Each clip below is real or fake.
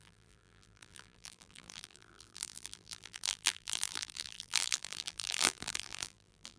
fake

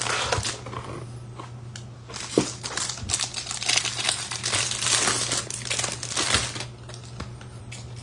real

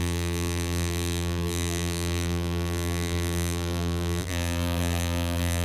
fake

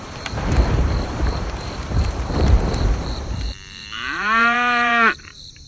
fake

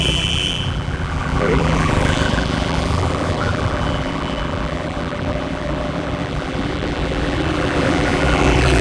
fake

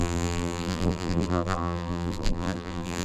fake